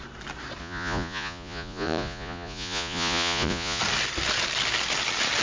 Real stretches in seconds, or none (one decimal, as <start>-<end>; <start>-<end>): 0.0-0.6; 3.8-5.4